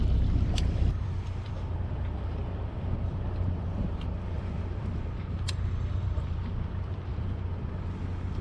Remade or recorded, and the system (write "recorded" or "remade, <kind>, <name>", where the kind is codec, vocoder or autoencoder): remade, vocoder, BigVGAN v2